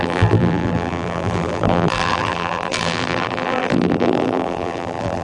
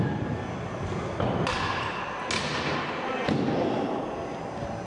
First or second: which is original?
second